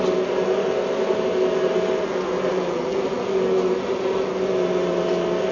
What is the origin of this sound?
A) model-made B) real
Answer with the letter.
B